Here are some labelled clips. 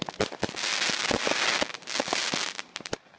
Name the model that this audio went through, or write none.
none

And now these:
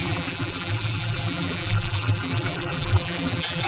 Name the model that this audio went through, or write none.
vocoder, BigVGAN v2